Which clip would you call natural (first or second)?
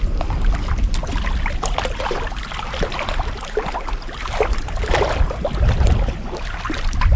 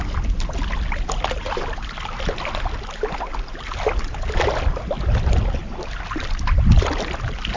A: second